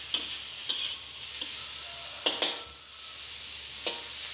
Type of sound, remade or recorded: recorded